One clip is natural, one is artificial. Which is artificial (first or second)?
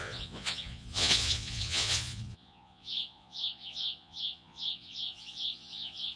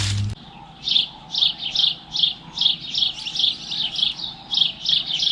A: first